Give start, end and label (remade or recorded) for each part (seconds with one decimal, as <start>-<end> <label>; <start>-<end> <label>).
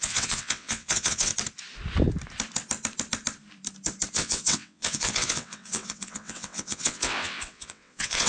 0.0-1.3 remade; 1.3-4.1 recorded; 4.1-8.3 remade